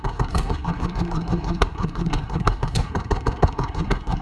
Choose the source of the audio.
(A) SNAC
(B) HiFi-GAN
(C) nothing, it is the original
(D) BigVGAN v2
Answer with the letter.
A